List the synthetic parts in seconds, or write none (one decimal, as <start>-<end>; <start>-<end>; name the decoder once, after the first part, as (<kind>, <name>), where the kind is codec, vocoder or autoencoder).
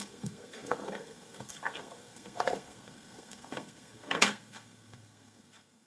0.0-5.9 (codec, SNAC)